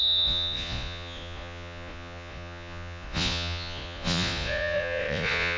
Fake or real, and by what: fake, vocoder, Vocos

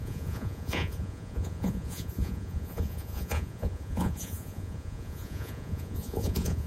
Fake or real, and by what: fake, vocoder, Vocos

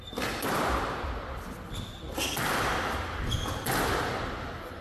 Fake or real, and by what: real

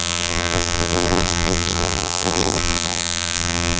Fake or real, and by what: fake, vocoder, BigVGAN v2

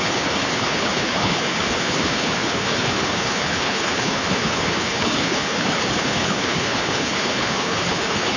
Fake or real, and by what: fake, codec, HILCodec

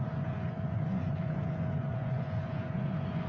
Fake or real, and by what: fake, vocoder, Vocos